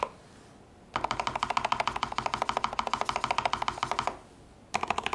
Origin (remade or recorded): recorded